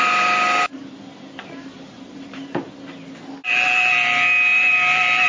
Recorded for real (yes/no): yes